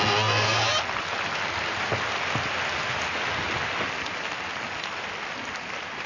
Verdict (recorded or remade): recorded